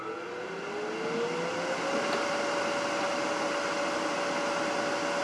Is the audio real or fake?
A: real